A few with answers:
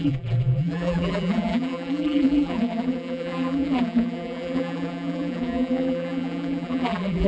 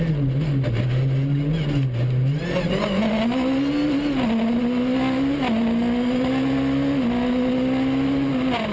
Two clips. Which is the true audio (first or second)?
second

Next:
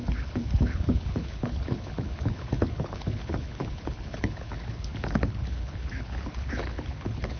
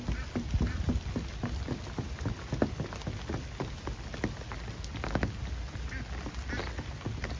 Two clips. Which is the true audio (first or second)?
second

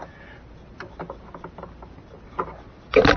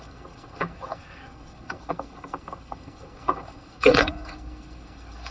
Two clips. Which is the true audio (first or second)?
first